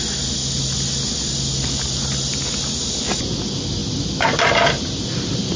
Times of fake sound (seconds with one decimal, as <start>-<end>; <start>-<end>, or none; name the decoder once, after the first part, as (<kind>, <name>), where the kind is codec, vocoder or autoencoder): none